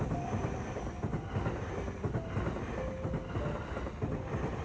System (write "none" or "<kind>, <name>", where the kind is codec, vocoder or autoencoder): none